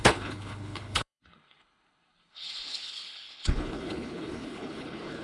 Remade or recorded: remade